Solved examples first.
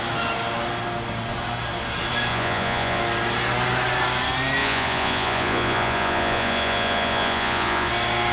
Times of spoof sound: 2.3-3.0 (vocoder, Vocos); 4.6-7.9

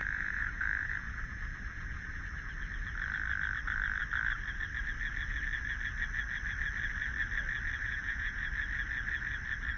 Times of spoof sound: 0.0-2.2 (vocoder, Vocos); 7.8-8.5

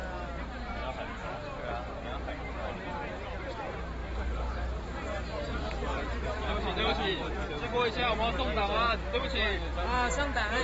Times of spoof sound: 4.0-7.5 (vocoder, BigVGAN v2)

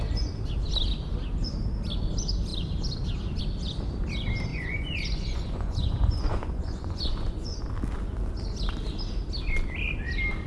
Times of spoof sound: 4.5-7.6 (vocoder, Vocos)

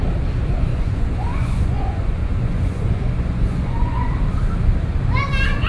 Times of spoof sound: 0.7-4.1 (vocoder, Vocos)

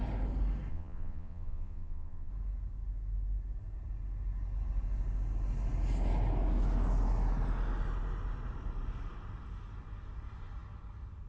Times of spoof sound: 0.7-2.3 (vocoder, Vocos)